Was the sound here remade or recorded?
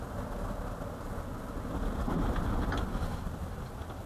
recorded